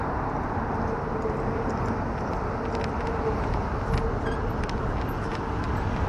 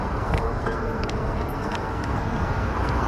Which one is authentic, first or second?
first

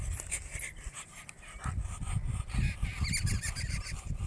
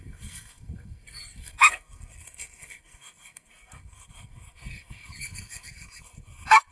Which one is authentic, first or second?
first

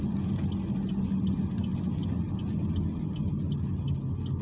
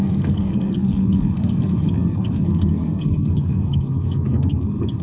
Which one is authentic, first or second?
first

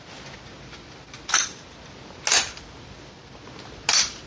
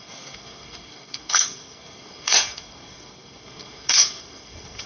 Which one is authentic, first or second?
first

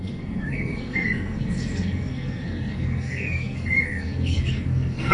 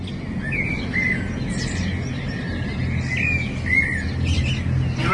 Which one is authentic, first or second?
second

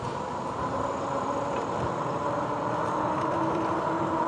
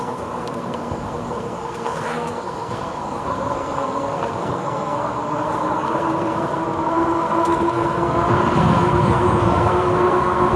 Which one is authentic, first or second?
first